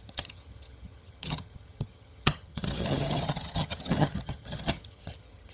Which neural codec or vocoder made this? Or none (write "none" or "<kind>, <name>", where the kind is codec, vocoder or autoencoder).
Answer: vocoder, HiFi-GAN